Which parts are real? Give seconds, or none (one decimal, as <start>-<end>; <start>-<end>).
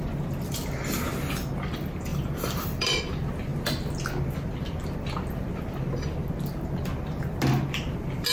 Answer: 0.0-2.1; 3.0-8.3